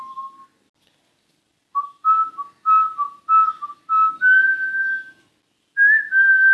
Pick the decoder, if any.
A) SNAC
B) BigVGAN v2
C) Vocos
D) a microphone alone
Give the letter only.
D